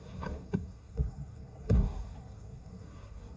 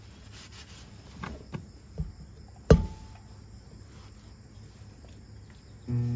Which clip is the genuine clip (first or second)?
second